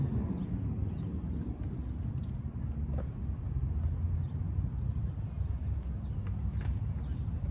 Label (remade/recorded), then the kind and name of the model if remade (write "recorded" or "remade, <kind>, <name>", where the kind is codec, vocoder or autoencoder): recorded